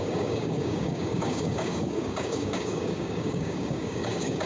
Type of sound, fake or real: fake